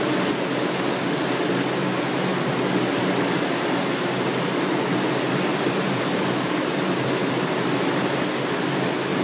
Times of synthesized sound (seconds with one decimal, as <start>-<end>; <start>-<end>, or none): 5.5-7.3